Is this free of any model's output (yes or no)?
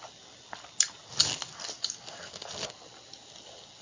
yes